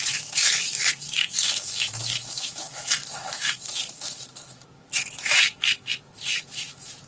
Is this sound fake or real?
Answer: fake